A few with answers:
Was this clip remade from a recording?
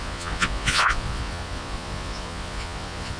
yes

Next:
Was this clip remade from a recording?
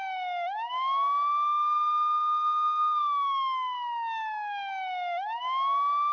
yes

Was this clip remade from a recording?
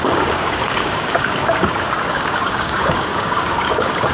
yes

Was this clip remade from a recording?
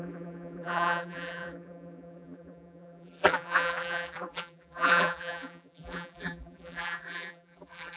yes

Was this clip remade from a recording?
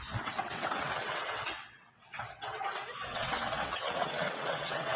yes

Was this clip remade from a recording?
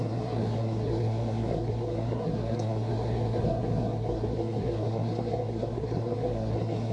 yes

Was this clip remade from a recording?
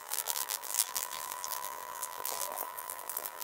yes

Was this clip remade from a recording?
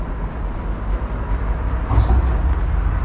no